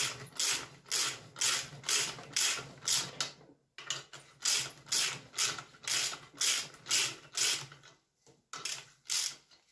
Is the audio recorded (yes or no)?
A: yes